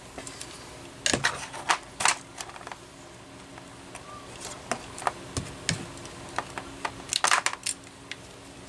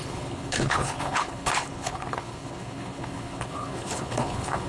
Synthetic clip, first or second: second